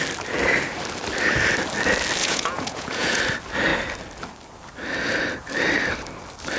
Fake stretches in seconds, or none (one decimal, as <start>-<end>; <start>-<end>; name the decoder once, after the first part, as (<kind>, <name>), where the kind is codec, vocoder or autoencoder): 2.2-3.2 (vocoder, Vocos)